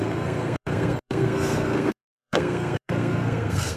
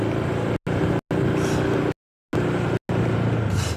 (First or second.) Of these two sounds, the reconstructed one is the first